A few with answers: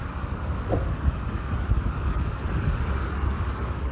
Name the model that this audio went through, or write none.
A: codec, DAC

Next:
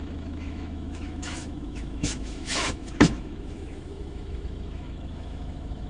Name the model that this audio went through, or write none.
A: autoencoder, DAC-VAE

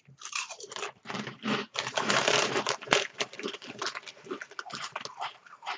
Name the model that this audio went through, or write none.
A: vocoder, BigVGAN v2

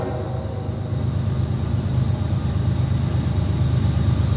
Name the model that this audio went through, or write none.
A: none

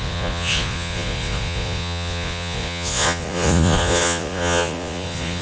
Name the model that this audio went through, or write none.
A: vocoder, Vocos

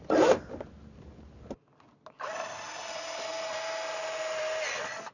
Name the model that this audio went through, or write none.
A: none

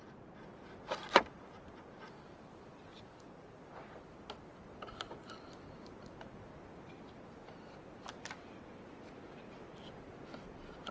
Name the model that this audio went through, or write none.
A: none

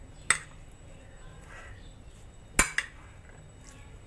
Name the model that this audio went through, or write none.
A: none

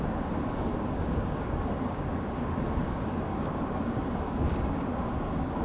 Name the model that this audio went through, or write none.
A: codec, DAC